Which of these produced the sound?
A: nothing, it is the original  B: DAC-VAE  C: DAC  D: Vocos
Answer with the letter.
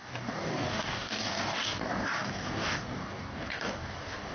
C